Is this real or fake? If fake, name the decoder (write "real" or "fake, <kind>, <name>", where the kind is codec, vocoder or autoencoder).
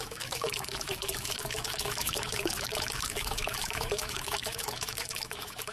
fake, autoencoder, DAC-VAE